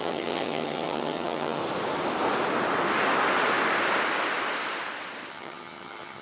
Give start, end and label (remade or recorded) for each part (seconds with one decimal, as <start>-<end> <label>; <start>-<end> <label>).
0.0-1.6 remade; 1.6-5.3 recorded; 5.3-6.2 remade